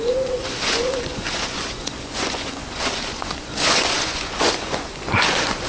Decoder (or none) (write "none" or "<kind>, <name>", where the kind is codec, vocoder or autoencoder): vocoder, Vocos